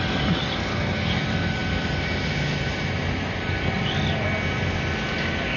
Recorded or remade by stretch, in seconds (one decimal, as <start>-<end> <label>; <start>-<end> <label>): 0.0-1.6 recorded; 1.6-4.3 remade; 4.3-5.6 recorded